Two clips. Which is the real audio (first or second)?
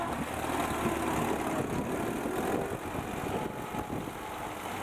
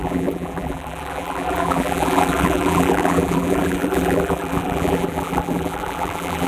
first